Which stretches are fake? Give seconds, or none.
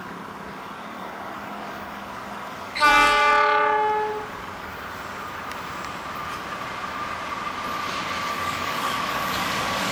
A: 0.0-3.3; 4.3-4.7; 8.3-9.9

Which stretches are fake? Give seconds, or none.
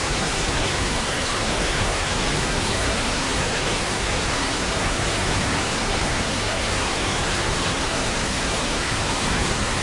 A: 0.0-9.8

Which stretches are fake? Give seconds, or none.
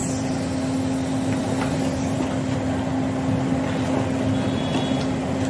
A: none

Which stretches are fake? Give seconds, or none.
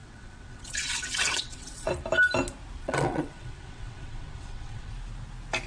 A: 0.0-1.9; 2.8-4.9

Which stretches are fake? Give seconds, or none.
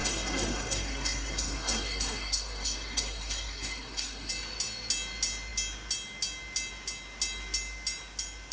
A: 0.0-4.3